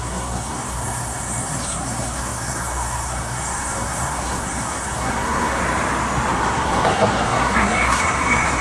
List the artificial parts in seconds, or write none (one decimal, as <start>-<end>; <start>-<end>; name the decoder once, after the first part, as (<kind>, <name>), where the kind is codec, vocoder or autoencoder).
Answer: 0.0-5.6 (codec, SNAC); 6.3-8.6